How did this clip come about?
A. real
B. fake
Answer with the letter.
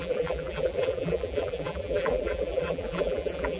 B